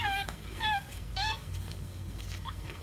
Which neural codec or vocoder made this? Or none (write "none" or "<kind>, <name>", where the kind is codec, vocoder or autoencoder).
codec, SNAC